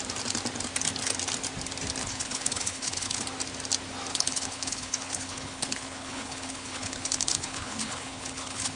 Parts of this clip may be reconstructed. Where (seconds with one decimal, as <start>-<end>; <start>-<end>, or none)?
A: 2.0-3.2; 4.1-8.8